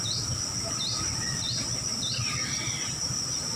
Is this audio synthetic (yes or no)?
no